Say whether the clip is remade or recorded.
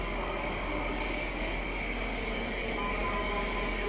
remade